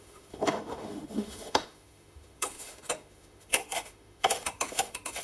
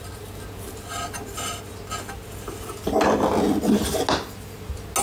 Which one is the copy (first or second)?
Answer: first